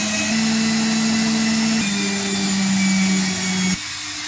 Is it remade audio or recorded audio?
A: recorded